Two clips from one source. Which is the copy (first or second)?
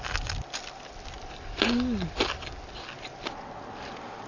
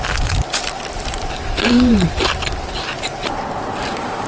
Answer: second